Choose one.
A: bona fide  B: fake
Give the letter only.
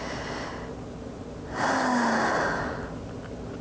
A